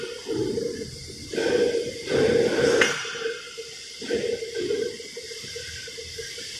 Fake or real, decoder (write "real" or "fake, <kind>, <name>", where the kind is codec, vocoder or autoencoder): real